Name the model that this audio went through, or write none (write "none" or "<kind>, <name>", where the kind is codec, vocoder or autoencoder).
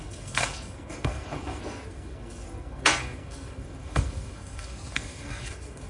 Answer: codec, SNAC